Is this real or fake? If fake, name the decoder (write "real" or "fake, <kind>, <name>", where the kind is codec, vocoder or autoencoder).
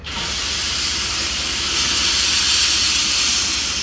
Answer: real